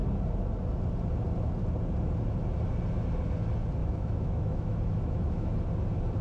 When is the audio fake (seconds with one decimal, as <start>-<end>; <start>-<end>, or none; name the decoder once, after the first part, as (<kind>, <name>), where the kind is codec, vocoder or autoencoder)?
3.8-5.5 (autoencoder, DAC-VAE)

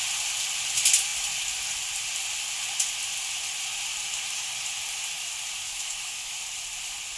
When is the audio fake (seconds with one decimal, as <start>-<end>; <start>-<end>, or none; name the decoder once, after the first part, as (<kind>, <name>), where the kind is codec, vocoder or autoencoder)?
5.6-6.4 (autoencoder, DAC-VAE)